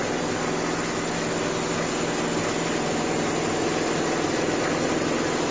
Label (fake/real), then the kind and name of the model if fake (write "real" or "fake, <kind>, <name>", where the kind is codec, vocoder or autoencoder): real